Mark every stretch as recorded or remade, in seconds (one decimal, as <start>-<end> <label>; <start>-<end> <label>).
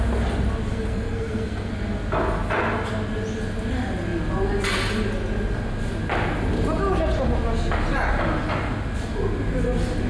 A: 0.0-0.7 recorded; 0.7-1.7 remade; 1.7-10.1 recorded